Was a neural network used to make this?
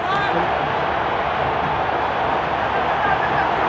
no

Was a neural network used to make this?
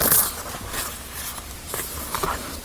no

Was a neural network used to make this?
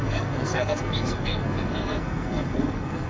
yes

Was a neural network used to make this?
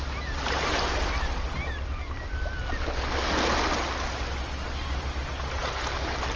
no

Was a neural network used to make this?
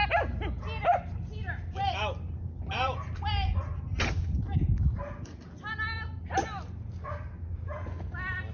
no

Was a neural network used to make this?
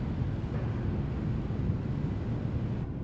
no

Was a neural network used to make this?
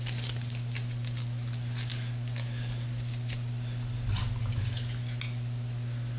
no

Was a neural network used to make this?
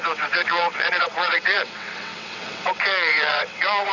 yes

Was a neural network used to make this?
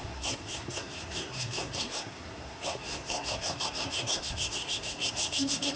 yes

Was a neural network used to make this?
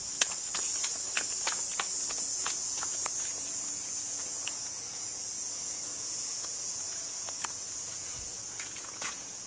yes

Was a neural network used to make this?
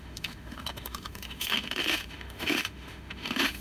yes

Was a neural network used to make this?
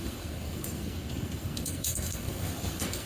yes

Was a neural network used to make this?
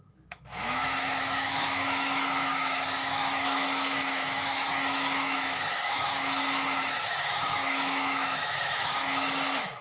yes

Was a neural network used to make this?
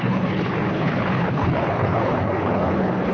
yes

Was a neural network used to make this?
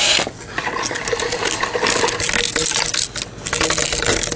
no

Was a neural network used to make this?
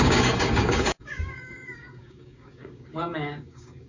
yes